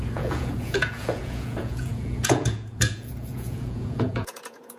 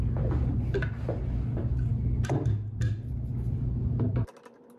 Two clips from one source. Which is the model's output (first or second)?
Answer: first